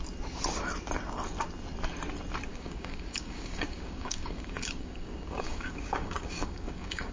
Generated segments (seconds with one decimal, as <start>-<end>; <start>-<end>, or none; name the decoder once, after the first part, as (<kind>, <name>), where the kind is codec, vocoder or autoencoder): 2.5-7.1 (codec, DAC)